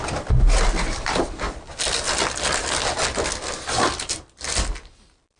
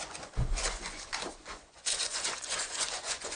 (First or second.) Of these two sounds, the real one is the first